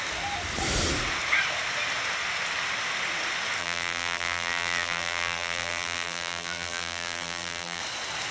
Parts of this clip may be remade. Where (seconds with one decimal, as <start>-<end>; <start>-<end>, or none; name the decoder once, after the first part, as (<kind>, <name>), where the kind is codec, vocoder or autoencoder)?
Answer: 3.6-7.8 (vocoder, BigVGAN v2)